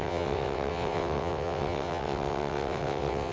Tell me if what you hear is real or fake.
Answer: fake